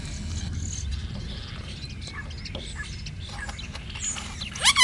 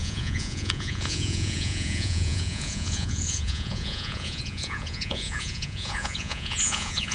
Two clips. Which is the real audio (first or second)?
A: first